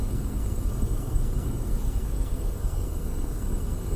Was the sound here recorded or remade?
remade